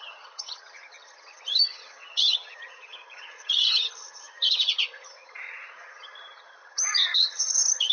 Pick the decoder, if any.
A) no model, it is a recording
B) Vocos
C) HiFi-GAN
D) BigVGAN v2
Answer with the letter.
C